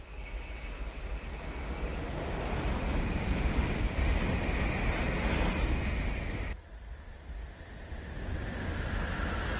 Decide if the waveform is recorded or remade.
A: recorded